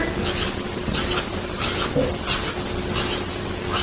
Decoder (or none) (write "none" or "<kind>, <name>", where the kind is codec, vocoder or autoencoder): none